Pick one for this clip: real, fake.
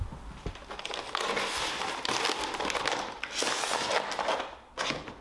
real